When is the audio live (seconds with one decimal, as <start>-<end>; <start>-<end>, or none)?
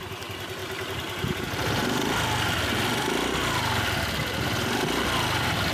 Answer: 0.0-0.6; 1.4-5.7